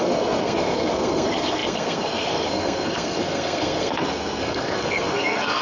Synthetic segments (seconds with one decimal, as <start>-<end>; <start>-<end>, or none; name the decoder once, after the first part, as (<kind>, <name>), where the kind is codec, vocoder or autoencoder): 0.0-5.6 (codec, SNAC)